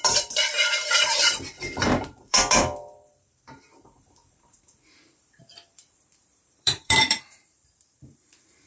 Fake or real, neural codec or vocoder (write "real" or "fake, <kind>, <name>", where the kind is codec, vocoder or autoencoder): fake, vocoder, BigVGAN v2